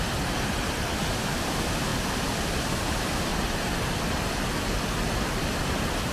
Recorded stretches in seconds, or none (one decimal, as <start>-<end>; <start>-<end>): 1.9-2.5; 3.3-5.6